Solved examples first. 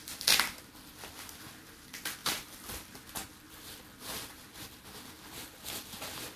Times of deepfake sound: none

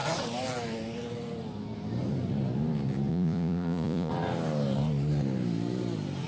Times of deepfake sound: 3.1-4.1 (vocoder, Vocos)

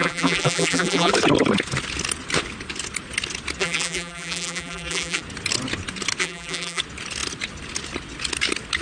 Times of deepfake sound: 0.0-1.1 (vocoder, BigVGAN v2); 3.6-5.2; 6.2-6.8

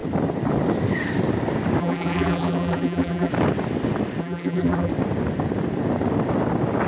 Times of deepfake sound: 1.8-3.3 (vocoder, BigVGAN v2); 4.2-4.9

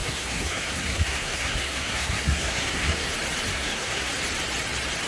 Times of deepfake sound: 0.0-3.1 (codec, SNAC); 3.5-4.1